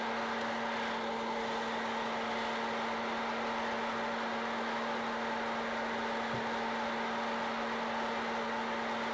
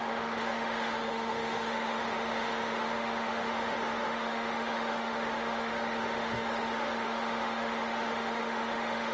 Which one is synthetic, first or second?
second